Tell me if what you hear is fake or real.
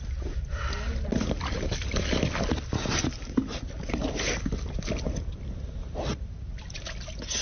real